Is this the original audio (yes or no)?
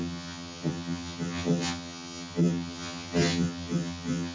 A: no